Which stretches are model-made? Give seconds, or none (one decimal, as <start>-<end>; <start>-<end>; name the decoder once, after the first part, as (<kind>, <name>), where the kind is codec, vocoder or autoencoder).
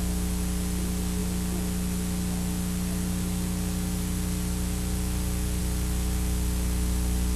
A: none